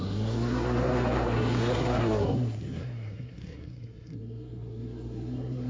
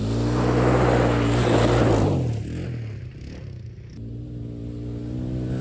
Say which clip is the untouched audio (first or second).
second